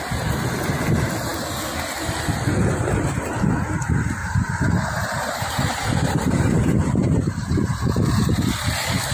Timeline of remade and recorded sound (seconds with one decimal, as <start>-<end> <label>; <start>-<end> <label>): 0.0-4.2 recorded; 4.2-6.6 remade; 6.6-7.0 recorded; 7.0-7.7 remade; 7.7-9.1 recorded